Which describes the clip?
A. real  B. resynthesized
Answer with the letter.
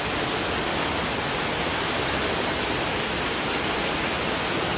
A